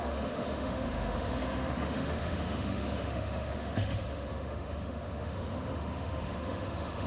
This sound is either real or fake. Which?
fake